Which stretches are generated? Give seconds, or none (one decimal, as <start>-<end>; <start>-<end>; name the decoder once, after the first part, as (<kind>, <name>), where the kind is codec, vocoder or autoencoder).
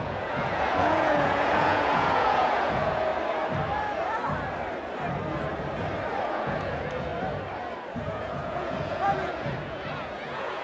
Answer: 0.0-3.1 (vocoder, Vocos); 6.2-7.1; 8.0-10.6